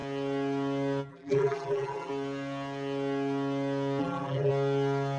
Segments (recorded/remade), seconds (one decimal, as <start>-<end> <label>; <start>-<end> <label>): 0.0-1.1 recorded; 1.1-2.1 remade; 2.1-4.0 recorded; 4.0-4.5 remade; 4.5-5.2 recorded